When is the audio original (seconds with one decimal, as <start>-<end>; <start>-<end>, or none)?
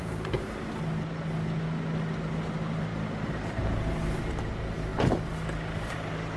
0.7-2.9; 3.5-6.4